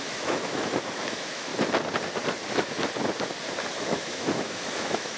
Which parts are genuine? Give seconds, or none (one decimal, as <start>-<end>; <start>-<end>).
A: 1.5-3.7